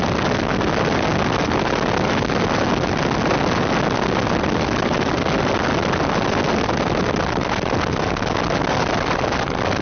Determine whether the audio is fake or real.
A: real